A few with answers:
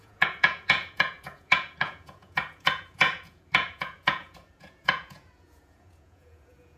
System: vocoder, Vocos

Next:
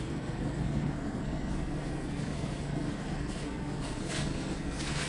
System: codec, SNAC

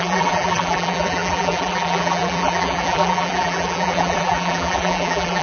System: vocoder, BigVGAN v2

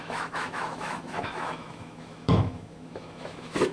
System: autoencoder, DAC-VAE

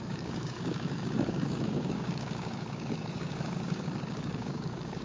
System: codec, DAC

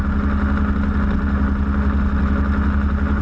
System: none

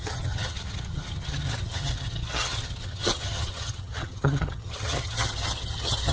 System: vocoder, HiFi-GAN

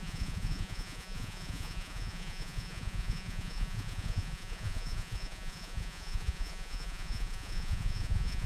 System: vocoder, Vocos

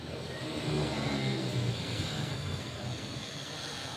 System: codec, SNAC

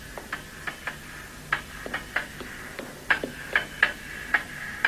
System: none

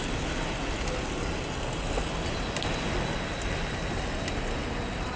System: none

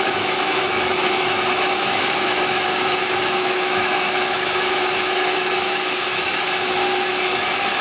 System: autoencoder, DAC-VAE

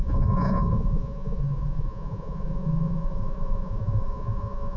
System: vocoder, Vocos